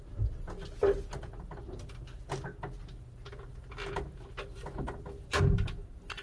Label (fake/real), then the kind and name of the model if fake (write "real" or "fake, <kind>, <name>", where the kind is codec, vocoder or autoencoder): real